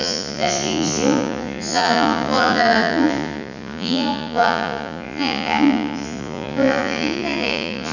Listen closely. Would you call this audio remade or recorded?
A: remade